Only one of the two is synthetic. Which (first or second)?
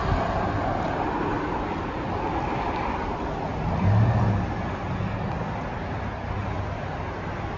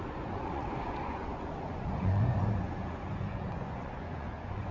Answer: second